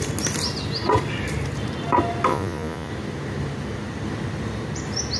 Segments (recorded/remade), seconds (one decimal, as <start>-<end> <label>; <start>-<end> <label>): 0.0-2.3 recorded; 2.3-2.9 remade; 2.9-5.2 recorded